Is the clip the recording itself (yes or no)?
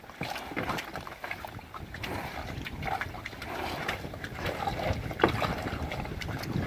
yes